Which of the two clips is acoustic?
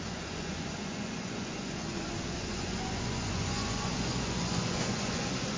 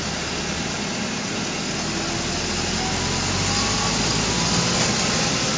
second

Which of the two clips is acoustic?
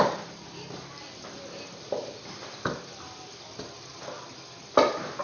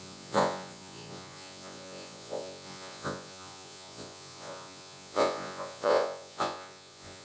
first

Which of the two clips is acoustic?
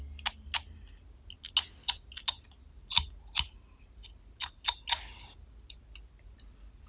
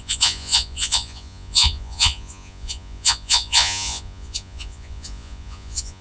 first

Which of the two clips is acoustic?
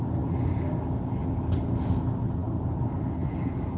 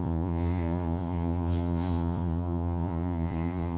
first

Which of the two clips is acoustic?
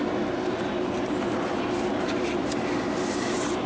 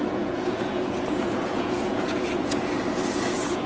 first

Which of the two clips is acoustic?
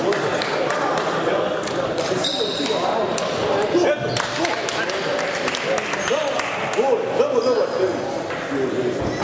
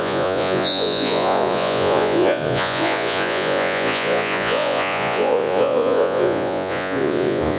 first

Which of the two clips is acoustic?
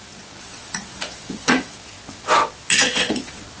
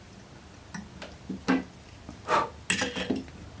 second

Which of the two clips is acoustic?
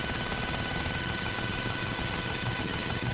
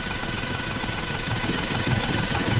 first